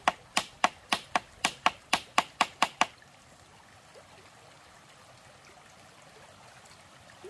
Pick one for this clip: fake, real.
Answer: real